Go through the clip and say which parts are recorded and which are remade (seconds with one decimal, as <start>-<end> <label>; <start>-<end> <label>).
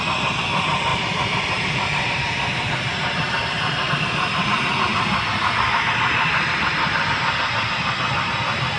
0.0-0.9 recorded; 0.9-3.9 remade; 3.9-8.8 recorded